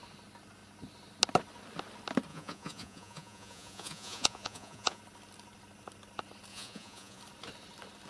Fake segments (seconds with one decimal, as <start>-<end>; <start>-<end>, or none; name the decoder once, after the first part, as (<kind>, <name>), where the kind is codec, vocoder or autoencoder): 2.3-5.0 (vocoder, Vocos); 6.5-7.2